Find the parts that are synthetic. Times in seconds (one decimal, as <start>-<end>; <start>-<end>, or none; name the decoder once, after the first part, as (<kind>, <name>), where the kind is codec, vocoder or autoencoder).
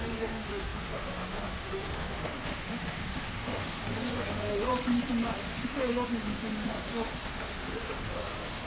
0.0-4.7 (autoencoder, DAC-VAE); 5.4-8.7